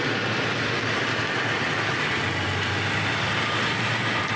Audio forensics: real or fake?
real